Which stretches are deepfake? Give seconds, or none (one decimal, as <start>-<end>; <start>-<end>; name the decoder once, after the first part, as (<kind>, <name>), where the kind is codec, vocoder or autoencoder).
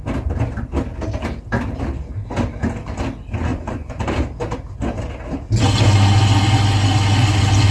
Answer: 3.5-4.0 (vocoder, Vocos)